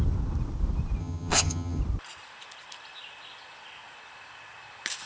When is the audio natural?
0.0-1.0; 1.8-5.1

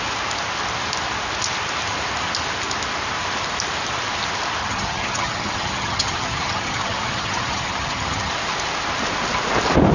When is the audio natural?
0.0-4.6; 8.3-9.9